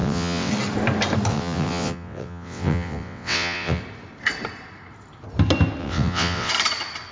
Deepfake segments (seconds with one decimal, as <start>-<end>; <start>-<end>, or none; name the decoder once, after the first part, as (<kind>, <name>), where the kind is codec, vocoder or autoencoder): 0.0-0.5 (vocoder, WaveNeXt); 1.3-3.8; 5.8-6.5